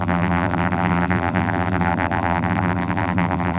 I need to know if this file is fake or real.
fake